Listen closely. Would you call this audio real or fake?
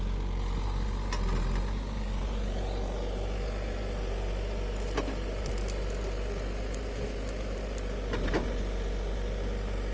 real